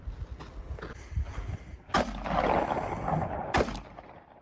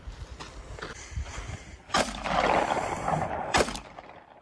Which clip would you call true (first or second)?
first